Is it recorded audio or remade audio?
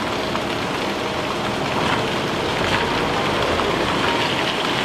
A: recorded